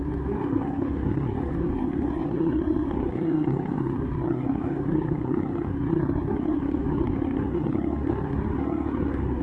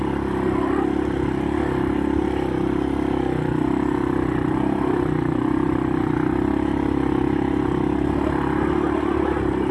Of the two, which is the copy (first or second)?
first